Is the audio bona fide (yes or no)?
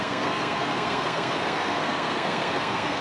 no